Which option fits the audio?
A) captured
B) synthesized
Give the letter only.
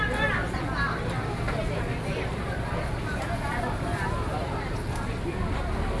A